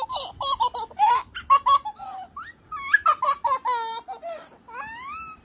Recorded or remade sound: recorded